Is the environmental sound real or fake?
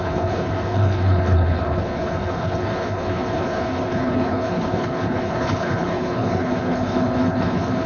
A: fake